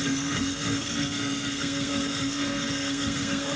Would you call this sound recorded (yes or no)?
no